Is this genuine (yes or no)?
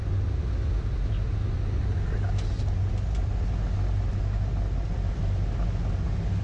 yes